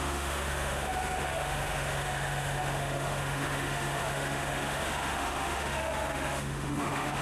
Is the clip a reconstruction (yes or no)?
yes